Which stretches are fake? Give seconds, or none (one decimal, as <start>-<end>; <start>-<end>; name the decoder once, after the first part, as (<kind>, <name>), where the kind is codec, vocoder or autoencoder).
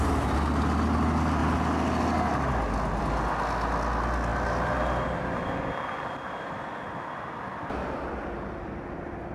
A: none